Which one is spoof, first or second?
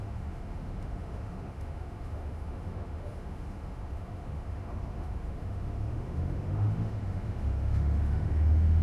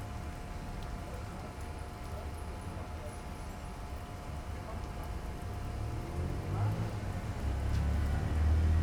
first